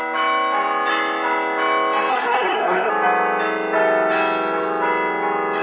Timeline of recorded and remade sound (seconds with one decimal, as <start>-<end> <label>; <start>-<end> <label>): 0.0-2.1 recorded; 2.1-2.9 remade; 2.9-5.6 recorded